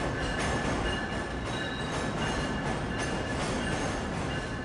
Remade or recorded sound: recorded